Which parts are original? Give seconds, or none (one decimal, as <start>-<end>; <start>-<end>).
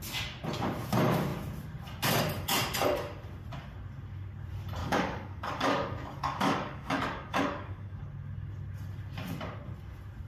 0.0-4.8; 8.0-10.3